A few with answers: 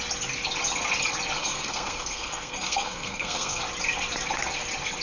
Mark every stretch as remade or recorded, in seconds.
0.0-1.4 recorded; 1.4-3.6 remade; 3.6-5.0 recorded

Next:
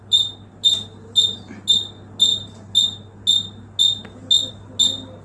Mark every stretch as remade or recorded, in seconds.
0.0-5.2 recorded

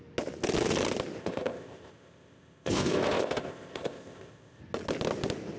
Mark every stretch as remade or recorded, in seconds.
0.0-1.2 recorded; 1.2-4.6 remade; 4.6-5.6 recorded

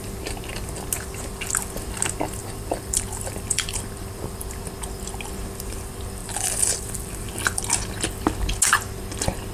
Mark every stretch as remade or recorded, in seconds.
0.0-2.4 recorded; 2.4-4.5 remade; 4.5-6.2 recorded; 6.2-7.6 remade; 7.6-9.5 recorded